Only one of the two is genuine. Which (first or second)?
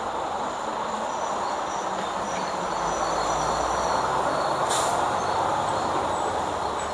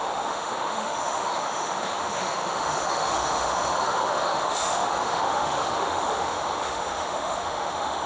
first